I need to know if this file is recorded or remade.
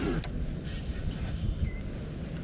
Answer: recorded